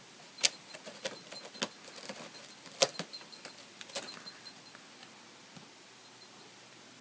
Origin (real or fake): real